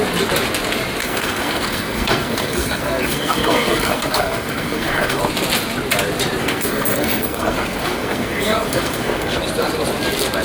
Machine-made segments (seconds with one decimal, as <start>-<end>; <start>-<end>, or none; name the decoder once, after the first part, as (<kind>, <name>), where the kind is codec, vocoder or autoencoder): 1.0-5.2 (codec, SNAC); 6.4-9.4